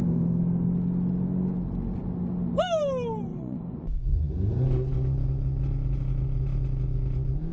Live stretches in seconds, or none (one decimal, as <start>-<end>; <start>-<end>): 0.0-3.3; 4.3-7.5